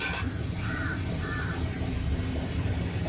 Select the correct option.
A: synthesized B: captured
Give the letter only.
A